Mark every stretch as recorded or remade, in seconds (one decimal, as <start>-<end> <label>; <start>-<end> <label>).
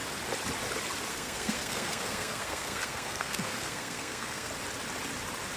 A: 0.0-1.1 recorded; 1.1-4.5 remade; 4.5-5.6 recorded